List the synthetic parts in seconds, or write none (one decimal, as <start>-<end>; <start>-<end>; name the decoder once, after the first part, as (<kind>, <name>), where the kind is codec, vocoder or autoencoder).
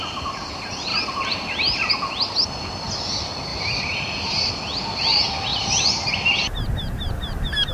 0.9-1.9 (vocoder, BigVGAN v2); 3.5-4.5; 5.5-6.1